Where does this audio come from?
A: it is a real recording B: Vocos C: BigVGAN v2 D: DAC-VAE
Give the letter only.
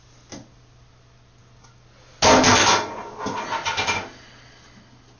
A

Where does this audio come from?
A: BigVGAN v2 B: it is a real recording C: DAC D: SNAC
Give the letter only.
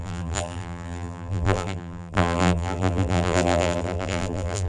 A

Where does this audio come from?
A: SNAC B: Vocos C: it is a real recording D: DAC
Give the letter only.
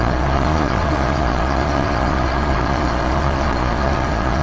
B